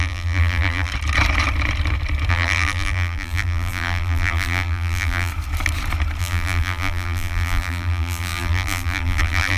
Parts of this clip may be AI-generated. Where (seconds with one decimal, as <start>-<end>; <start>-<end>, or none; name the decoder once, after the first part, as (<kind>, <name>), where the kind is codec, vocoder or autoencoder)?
0.0-0.9 (vocoder, BigVGAN v2); 2.3-5.3; 6.2-9.6